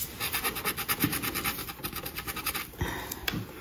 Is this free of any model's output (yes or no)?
yes